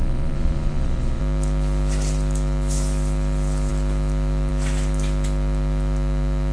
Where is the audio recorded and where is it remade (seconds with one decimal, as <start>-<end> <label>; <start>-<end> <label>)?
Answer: 0.0-1.2 remade; 1.2-6.5 recorded